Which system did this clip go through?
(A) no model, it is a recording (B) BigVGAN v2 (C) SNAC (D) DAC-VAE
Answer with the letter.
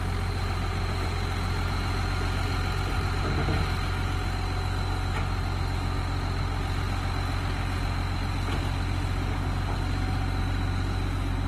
A